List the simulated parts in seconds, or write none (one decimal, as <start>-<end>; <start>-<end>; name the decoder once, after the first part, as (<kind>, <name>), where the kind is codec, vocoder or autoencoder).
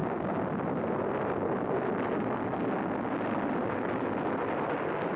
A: none